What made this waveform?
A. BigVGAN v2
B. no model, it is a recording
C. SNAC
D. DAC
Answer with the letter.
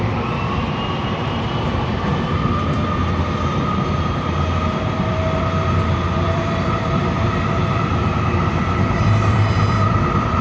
A